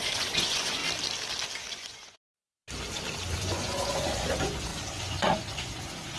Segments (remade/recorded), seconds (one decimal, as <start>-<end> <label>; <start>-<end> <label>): 0.0-0.8 remade; 0.8-1.7 recorded; 1.7-2.4 remade; 2.4-3.4 recorded; 3.4-6.2 remade